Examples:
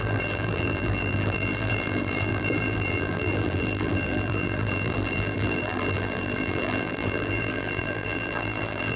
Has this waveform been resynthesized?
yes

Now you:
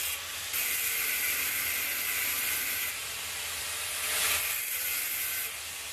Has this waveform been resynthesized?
no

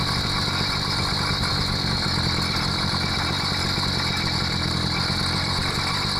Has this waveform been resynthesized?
no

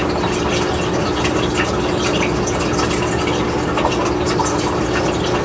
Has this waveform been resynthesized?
no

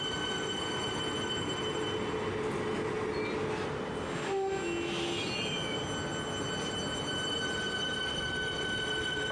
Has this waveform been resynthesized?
no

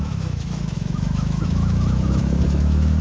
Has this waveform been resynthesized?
yes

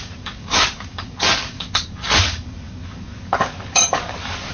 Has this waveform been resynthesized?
yes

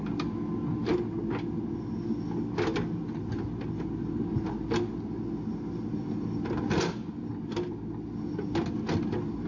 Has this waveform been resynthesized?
no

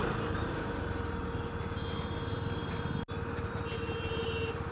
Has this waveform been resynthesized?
no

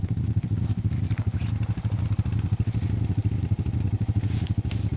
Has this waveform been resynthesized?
no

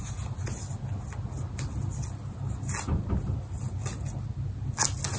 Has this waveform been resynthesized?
no